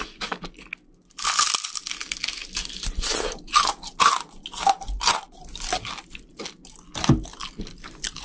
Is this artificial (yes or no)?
no